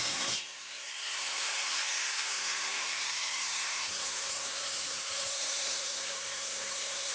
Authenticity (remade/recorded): remade